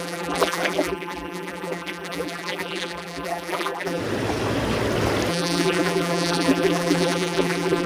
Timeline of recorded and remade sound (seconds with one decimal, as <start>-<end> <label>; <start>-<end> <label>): 0.0-4.0 remade; 4.0-5.3 recorded; 5.3-7.9 remade